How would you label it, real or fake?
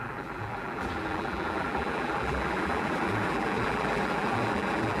fake